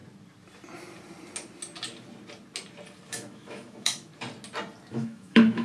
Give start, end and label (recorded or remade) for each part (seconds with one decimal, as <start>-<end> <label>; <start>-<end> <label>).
0.0-3.1 recorded; 3.1-4.1 remade; 4.1-4.9 recorded; 4.9-5.6 remade